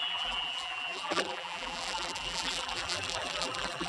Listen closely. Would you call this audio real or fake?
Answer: fake